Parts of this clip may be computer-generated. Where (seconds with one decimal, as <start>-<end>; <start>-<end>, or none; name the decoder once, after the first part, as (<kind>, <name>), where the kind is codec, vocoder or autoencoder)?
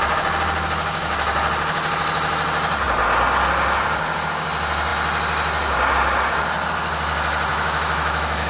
7.5-8.5 (autoencoder, DAC-VAE)